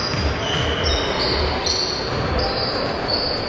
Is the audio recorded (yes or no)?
yes